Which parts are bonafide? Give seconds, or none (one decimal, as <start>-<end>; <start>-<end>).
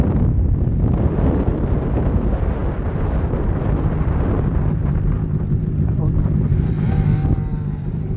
0.0-2.6; 4.0-7.5